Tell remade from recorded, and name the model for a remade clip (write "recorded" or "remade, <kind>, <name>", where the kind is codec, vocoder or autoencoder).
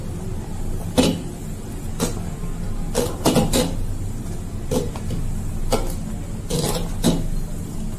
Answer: recorded